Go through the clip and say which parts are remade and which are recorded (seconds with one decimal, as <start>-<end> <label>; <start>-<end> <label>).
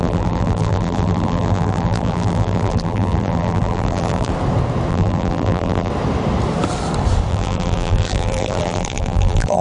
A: 0.0-4.3 remade; 4.3-4.9 recorded; 4.9-5.9 remade; 5.9-7.3 recorded; 7.3-9.6 remade